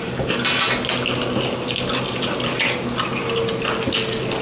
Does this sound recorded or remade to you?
recorded